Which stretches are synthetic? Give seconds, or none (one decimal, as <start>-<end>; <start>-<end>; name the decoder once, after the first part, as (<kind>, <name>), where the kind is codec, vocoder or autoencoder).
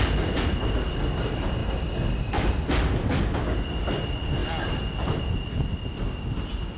none